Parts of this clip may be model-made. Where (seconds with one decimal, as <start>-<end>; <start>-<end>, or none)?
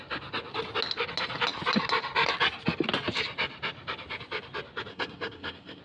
4.9-5.8